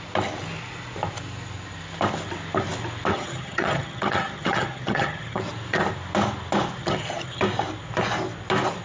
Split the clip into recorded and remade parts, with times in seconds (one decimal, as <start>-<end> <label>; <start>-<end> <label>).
0.0-3.1 recorded; 3.1-5.4 remade; 5.4-6.8 recorded; 6.8-7.4 remade; 7.4-8.8 recorded